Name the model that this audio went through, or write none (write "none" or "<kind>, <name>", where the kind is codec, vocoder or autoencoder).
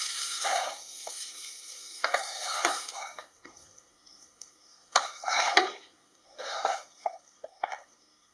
codec, SNAC